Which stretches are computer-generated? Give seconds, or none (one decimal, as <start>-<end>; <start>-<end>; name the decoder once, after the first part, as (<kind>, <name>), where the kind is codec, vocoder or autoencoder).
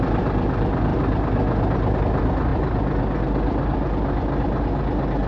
none